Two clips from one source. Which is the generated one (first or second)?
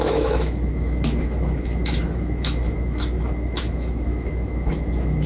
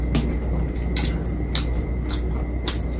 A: first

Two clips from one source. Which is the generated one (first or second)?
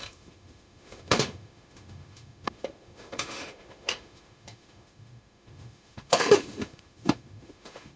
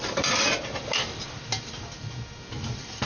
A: first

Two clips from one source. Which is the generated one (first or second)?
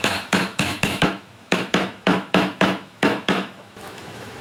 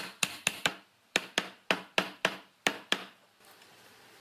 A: first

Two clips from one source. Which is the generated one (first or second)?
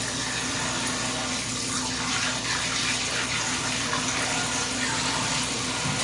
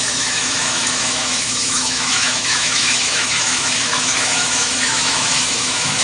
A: second